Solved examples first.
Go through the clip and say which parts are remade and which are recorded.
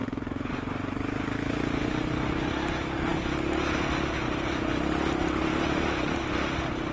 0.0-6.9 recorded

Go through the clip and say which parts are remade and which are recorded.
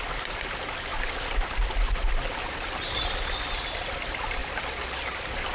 0.0-5.5 recorded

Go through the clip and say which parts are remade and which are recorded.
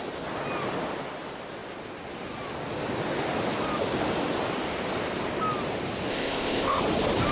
0.0-6.1 recorded; 6.1-6.8 remade; 6.8-7.3 recorded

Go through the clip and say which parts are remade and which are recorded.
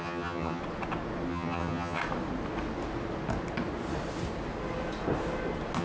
0.0-0.6 remade; 0.6-1.3 recorded; 1.3-2.0 remade; 2.0-5.8 recorded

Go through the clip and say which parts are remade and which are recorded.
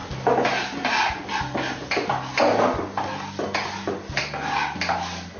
0.0-5.4 recorded